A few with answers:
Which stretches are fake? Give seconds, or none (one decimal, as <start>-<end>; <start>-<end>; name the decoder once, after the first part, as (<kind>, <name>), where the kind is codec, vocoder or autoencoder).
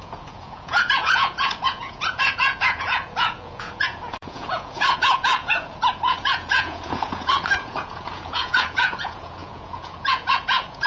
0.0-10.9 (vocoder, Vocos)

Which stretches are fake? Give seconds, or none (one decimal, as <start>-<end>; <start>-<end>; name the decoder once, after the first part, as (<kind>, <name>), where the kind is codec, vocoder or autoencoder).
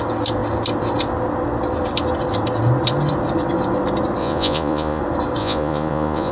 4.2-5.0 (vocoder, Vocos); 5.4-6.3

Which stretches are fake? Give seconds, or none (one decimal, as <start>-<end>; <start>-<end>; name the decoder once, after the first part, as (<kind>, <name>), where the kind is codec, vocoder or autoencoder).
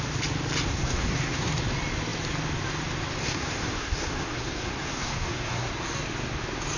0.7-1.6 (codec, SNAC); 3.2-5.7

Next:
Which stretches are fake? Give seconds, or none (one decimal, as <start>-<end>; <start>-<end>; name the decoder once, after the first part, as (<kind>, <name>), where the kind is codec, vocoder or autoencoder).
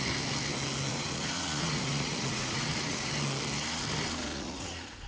0.9-3.1 (vocoder, Vocos); 4.3-5.1